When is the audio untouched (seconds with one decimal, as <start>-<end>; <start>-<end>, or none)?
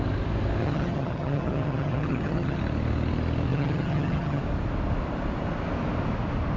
0.0-0.6; 2.6-3.5; 4.4-6.6